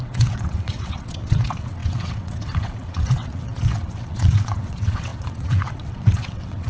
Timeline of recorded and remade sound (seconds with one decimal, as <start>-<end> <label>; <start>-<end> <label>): 0.0-6.7 remade